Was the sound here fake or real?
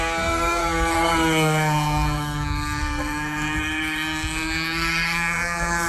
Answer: fake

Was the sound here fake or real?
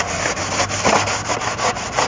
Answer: real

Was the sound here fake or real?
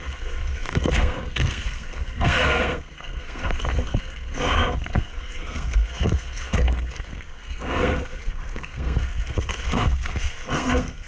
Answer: fake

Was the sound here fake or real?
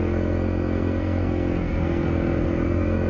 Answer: fake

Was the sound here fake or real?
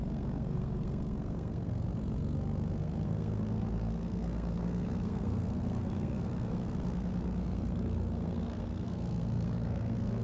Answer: fake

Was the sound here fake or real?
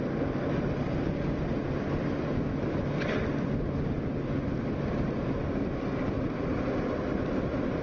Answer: real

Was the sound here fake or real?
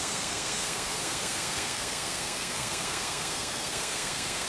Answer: fake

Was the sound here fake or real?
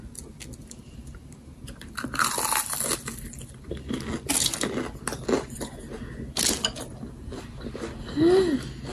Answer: real